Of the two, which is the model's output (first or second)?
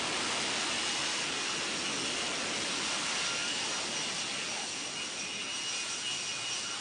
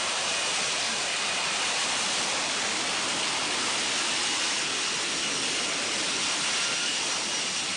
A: second